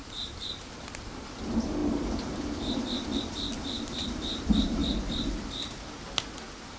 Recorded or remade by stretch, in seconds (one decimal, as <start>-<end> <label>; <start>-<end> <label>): 0.0-0.5 remade; 0.5-6.8 recorded